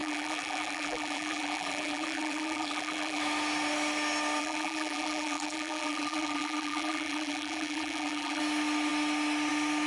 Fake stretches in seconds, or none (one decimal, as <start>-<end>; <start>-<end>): 0.0-3.2; 4.4-8.4